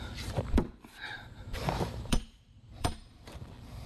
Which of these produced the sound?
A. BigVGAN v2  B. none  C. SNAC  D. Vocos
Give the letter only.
A